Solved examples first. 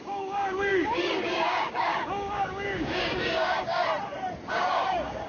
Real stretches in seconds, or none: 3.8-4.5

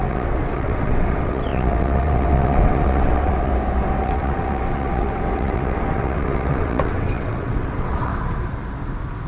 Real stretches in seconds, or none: 3.5-4.0; 8.1-9.3

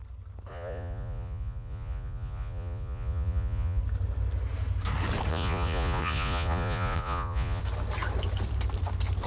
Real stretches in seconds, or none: 0.0-0.5; 3.8-5.3; 7.6-9.3

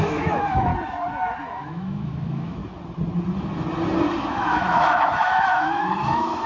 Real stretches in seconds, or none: 0.7-1.4; 2.6-4.2

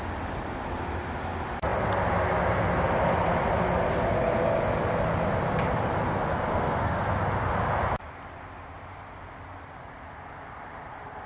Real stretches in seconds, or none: 0.0-6.5; 7.0-11.3

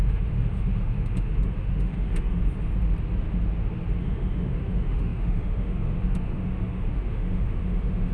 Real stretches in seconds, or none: 2.4-4.0